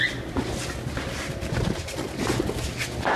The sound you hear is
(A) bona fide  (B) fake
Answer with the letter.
A